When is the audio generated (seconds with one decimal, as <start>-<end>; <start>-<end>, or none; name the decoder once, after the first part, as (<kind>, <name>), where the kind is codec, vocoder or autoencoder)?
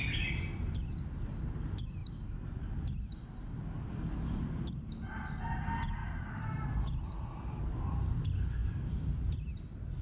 6.0-7.6 (vocoder, BigVGAN v2); 8.6-10.0